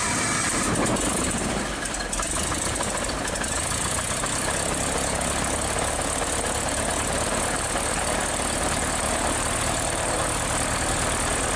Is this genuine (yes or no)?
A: yes